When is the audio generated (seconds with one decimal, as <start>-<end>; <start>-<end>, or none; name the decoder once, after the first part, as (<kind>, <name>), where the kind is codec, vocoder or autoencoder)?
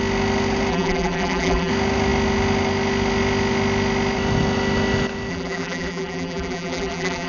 0.7-1.7 (vocoder, BigVGAN v2); 5.3-7.3